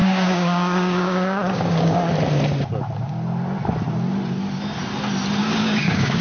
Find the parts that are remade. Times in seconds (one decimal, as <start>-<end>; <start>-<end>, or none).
0.0-2.1; 5.4-6.2